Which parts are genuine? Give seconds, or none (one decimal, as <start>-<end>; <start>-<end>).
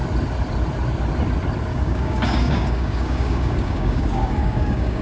0.0-1.7